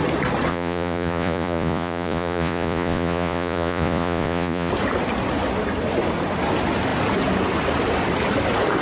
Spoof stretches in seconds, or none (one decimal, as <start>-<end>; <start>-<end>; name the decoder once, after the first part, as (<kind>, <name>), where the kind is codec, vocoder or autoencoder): 0.5-4.7 (vocoder, Vocos)